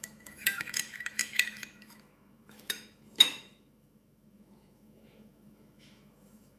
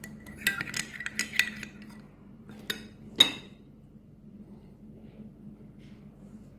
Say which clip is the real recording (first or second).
second